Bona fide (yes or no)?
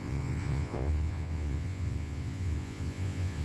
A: no